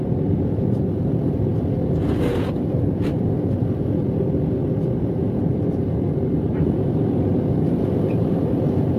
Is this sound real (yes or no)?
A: yes